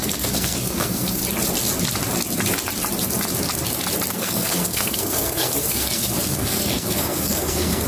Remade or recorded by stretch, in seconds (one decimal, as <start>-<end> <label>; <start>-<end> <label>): 0.0-1.2 remade; 1.2-4.1 recorded; 4.1-7.9 remade